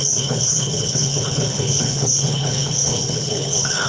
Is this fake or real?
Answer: fake